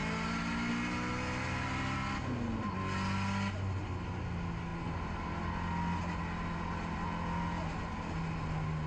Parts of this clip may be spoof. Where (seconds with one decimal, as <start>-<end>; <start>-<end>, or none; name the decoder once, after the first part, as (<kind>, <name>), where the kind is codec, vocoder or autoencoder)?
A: none